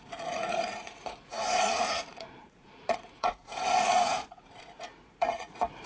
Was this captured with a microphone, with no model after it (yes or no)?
no